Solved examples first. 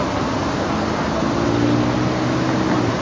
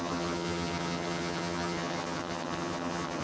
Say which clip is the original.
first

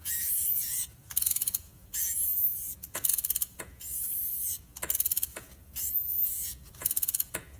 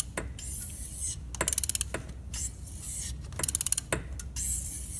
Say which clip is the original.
second